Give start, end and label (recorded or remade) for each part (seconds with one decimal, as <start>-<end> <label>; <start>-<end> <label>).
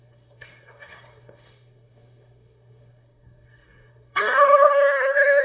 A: 0.0-5.4 remade